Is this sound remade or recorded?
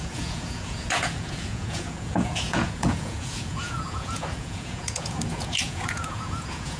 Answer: remade